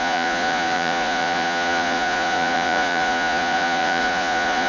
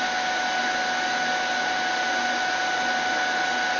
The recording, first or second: second